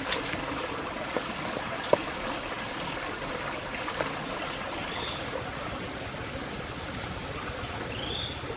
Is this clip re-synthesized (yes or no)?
no